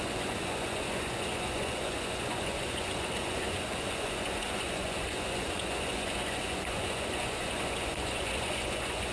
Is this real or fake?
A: fake